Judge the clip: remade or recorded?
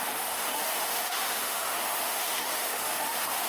remade